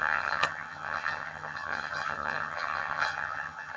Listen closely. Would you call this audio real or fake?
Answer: fake